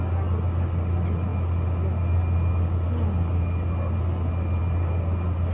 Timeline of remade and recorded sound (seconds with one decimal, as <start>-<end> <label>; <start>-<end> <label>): 0.0-5.5 recorded